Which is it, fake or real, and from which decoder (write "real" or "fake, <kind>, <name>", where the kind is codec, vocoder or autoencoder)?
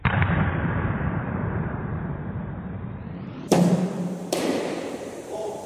fake, vocoder, BigVGAN v2